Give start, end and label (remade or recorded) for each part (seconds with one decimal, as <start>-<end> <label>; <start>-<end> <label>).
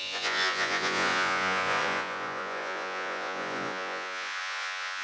0.0-5.0 remade